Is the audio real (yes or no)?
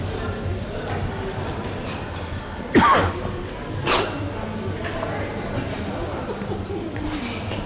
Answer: yes